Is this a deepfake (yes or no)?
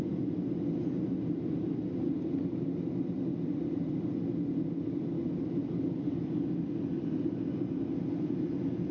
no